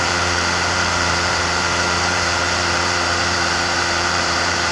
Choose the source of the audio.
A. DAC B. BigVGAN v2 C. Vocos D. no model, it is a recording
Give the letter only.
B